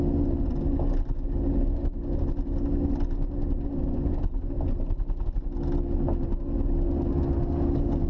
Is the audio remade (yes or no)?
no